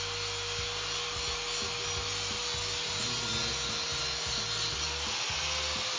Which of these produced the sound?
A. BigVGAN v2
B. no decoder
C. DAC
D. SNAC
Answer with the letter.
B